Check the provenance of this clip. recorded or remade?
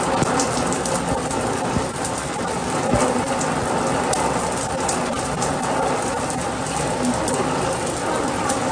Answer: recorded